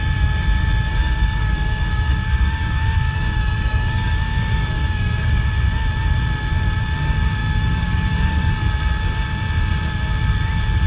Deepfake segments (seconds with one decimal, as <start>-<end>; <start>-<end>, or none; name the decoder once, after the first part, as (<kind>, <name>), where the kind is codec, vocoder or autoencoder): 0.9-5.5 (codec, DAC); 7.4-8.5